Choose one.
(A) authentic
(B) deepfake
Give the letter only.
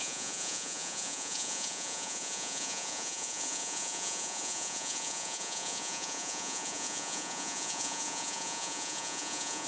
B